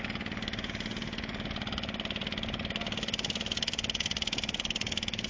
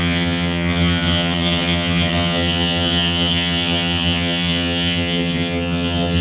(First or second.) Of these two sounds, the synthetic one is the second